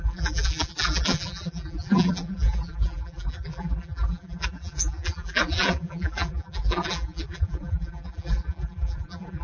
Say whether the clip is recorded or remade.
remade